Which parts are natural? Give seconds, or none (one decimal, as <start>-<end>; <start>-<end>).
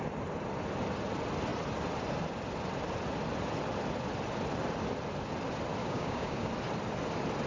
0.0-5.8; 6.5-7.5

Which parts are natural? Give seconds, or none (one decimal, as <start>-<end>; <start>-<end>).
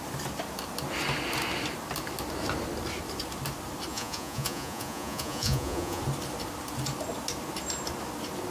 0.0-3.9; 6.0-8.5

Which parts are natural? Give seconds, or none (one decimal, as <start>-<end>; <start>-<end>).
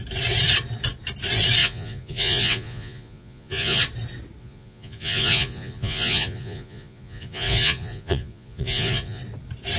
0.0-1.6; 3.8-4.4; 9.2-9.8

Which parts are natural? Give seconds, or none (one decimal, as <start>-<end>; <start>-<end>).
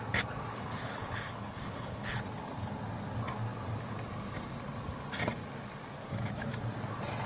0.0-0.5; 2.2-7.3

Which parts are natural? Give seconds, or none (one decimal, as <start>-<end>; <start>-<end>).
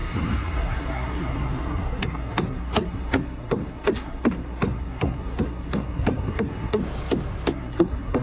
6.8-7.5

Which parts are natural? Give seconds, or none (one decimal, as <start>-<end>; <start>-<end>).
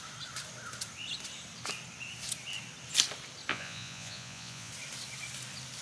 0.0-3.5; 4.7-5.8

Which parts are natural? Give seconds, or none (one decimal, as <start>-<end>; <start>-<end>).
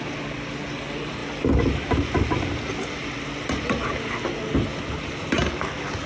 0.0-6.1